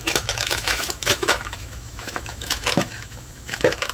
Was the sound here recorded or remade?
remade